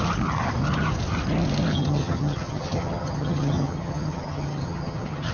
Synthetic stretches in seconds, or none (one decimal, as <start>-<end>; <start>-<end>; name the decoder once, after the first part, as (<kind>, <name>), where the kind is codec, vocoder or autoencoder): 1.7-5.3 (vocoder, HiFi-GAN)